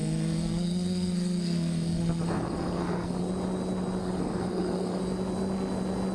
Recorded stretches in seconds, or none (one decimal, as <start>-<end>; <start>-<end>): 3.2-4.0; 5.0-6.1